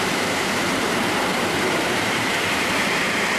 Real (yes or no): no